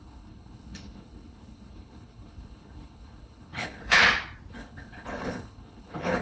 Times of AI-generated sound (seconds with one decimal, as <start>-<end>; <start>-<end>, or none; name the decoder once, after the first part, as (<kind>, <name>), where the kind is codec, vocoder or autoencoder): 0.0-4.0 (codec, HILCodec); 4.5-6.2